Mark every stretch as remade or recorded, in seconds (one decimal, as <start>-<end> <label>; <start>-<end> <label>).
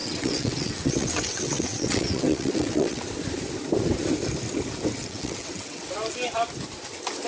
0.0-3.0 remade; 3.0-5.0 recorded; 5.0-5.8 remade; 5.8-7.3 recorded